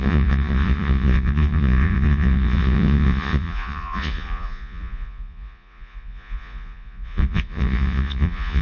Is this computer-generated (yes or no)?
yes